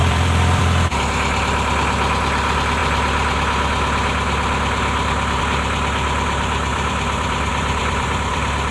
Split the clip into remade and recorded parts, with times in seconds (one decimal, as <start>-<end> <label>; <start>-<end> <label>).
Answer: 0.0-0.6 remade; 0.6-6.7 recorded; 6.7-8.7 remade